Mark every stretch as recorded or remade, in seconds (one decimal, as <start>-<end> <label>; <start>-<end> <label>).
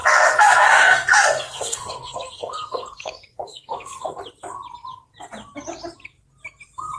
0.0-4.2 remade; 4.2-7.0 recorded